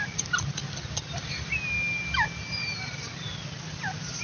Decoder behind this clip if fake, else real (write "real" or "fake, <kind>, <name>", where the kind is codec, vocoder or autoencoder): real